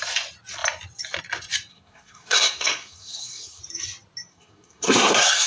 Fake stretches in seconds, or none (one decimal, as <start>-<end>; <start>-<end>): 1.7-3.6; 4.3-5.5